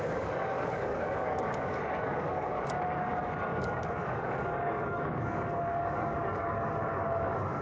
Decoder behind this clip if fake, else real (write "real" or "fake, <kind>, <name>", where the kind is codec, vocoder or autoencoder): fake, codec, DAC